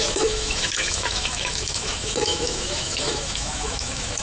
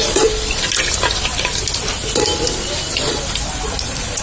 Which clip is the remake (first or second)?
first